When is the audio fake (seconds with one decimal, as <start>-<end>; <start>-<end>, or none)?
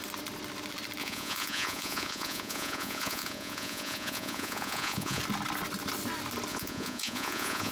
1.0-5.2; 6.5-7.7